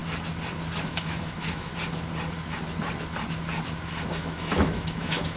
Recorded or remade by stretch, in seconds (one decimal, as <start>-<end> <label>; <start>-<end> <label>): 0.0-0.8 recorded; 0.8-1.7 remade; 1.7-4.1 recorded; 4.1-5.4 remade

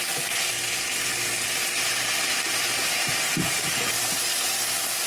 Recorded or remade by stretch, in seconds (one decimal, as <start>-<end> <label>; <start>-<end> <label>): 0.0-5.1 recorded

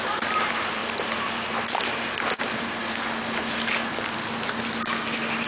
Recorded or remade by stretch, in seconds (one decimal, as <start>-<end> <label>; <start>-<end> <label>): 0.0-5.5 recorded

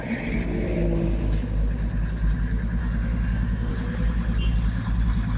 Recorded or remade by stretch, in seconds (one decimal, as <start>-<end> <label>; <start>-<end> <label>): 0.0-2.8 recorded; 2.8-3.7 remade; 3.7-5.4 recorded